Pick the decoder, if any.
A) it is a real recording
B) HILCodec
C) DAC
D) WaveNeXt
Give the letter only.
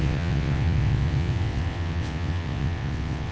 D